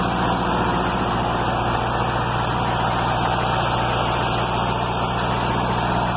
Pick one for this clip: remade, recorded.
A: recorded